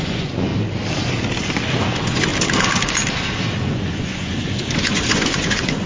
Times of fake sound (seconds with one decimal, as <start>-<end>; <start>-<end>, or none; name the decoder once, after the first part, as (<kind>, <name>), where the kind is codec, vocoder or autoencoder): 0.0-0.5 (vocoder, Vocos); 1.8-2.3; 3.6-5.9